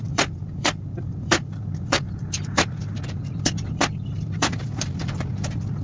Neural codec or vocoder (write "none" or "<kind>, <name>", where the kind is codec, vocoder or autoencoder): vocoder, BigVGAN v2